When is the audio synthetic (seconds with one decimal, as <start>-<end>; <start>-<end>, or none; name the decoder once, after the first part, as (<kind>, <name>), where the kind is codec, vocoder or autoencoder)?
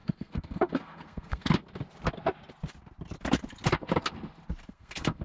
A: 0.0-1.6 (codec, SNAC); 4.7-5.2